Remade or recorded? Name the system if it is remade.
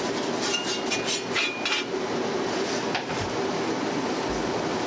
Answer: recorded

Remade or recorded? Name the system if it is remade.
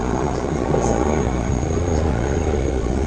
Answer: remade, vocoder, Vocos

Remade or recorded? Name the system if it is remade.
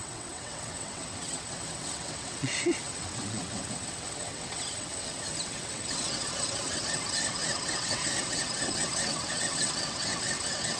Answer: remade, vocoder, WaveNeXt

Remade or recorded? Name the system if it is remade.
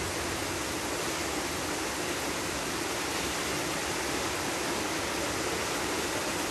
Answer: recorded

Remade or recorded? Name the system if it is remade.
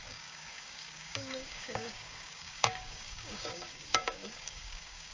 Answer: remade, codec, DAC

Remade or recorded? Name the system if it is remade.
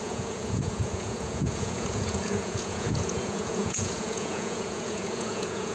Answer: remade, vocoder, Vocos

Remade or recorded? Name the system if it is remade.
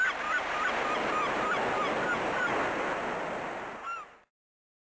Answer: recorded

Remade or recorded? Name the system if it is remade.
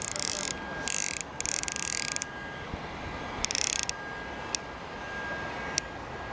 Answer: recorded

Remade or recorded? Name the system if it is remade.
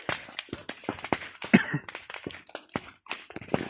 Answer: recorded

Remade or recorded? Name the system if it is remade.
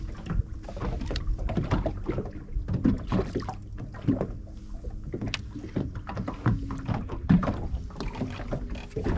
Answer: recorded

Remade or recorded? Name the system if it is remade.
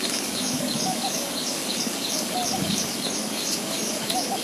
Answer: remade, codec, DAC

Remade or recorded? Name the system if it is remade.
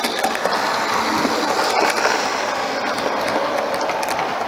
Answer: recorded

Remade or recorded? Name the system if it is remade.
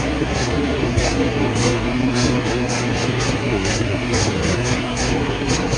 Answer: remade, codec, SNAC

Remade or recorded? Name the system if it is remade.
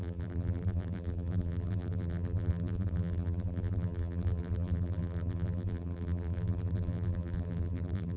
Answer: remade, vocoder, BigVGAN v2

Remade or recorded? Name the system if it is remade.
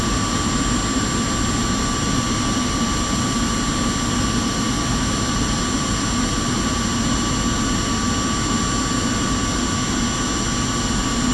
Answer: recorded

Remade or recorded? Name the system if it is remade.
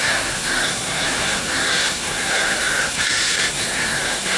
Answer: remade, codec, SNAC